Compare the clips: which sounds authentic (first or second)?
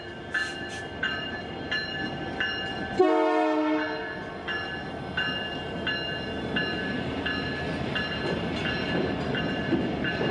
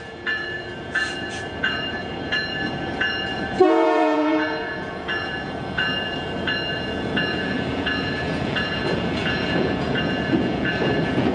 first